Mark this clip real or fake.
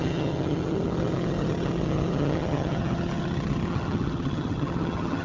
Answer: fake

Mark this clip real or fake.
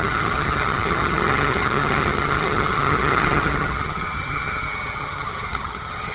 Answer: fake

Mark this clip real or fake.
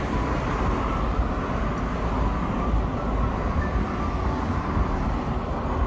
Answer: real